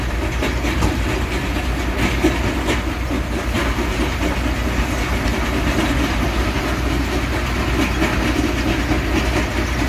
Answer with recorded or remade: recorded